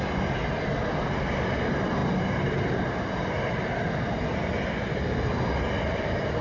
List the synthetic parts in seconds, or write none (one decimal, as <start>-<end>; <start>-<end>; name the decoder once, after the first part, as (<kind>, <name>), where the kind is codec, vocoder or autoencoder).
none